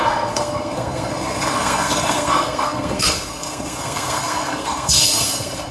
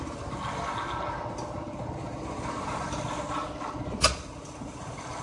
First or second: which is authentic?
second